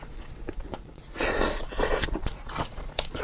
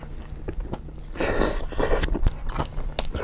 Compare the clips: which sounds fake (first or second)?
first